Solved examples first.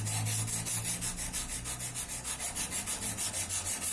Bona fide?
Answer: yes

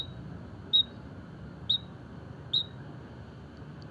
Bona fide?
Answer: yes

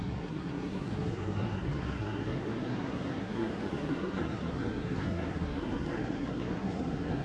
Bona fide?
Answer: no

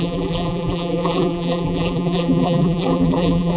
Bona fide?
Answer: no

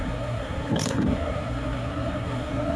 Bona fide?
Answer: no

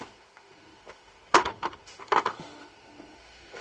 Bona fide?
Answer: no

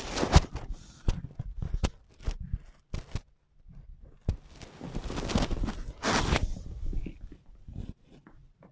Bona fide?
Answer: yes